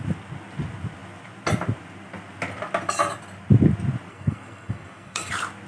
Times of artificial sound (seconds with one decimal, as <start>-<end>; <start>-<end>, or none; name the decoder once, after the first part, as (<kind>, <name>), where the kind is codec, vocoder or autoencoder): 4.1-5.3 (codec, SNAC)